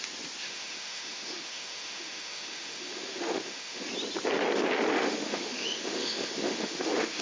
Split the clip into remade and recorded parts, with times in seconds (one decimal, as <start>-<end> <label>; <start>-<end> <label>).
0.0-0.4 recorded; 0.4-3.9 remade; 3.9-4.9 recorded; 4.9-7.2 remade